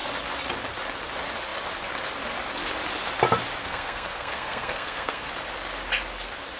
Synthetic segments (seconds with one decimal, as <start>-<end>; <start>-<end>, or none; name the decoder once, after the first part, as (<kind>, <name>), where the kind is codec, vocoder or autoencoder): 3.6-5.3 (codec, SNAC)